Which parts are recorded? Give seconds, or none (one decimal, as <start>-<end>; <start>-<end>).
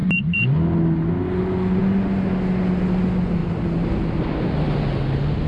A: 0.0-5.5